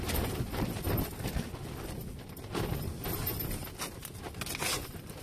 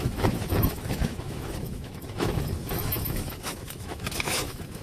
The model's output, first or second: second